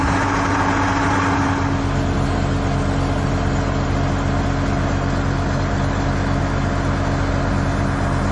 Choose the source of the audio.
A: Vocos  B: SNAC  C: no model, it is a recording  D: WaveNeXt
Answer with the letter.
C